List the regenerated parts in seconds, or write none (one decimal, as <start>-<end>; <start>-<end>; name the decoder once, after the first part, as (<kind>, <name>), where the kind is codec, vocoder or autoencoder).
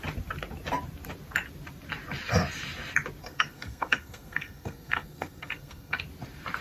3.2-6.0 (codec, SNAC)